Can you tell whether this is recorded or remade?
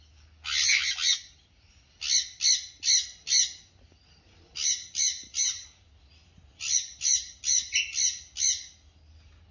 recorded